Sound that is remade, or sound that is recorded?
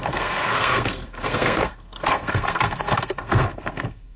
remade